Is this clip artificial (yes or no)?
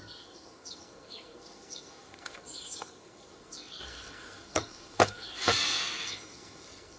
yes